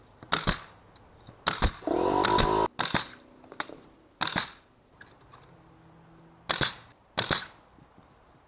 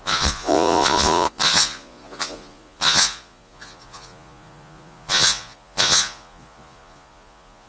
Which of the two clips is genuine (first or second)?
first